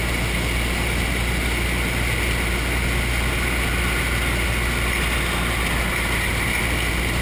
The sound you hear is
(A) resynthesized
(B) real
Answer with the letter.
B